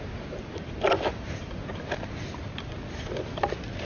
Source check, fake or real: real